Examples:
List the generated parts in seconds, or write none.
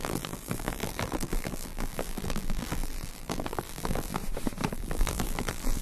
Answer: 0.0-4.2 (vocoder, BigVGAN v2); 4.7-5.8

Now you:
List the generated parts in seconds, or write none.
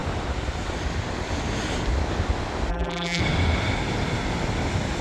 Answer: 2.7-3.2 (vocoder, BigVGAN v2)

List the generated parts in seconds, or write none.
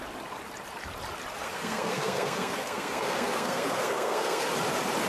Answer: 1.4-4.5 (codec, SNAC)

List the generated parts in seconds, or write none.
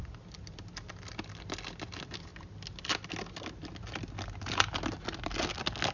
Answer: none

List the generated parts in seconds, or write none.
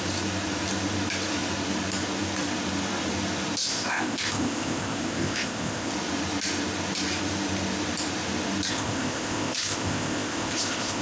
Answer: 3.6-5.9 (codec, ZipCodec); 8.7-11.0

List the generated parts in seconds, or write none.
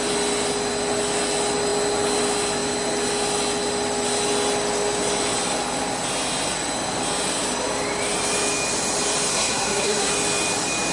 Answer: 9.3-10.1 (codec, SNAC)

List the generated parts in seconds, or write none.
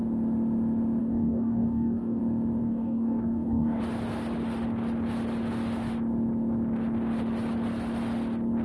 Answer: 1.0-2.2 (codec, DAC); 2.6-3.8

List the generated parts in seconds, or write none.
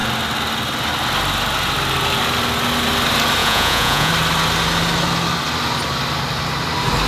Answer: 3.4-4.1 (vocoder, Vocos)